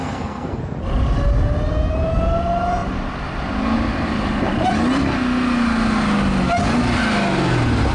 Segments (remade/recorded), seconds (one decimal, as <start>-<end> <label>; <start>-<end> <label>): 0.0-0.6 remade; 0.6-7.9 recorded